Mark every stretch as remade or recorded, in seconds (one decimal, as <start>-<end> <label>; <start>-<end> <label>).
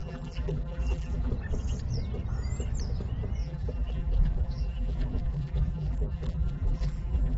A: 0.0-1.3 remade; 1.3-3.4 recorded; 3.4-7.4 remade